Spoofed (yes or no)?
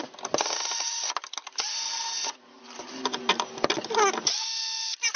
no